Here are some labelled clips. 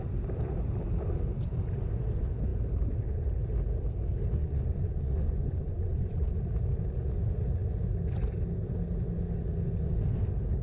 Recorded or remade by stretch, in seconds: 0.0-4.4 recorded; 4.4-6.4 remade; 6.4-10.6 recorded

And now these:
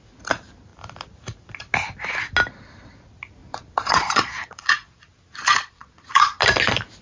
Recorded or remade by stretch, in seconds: 0.0-3.4 recorded; 3.4-6.4 remade; 6.4-7.0 recorded

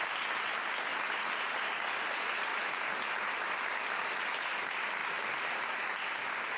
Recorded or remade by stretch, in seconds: 0.0-6.6 recorded